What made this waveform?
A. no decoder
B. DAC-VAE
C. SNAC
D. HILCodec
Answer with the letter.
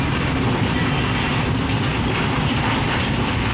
A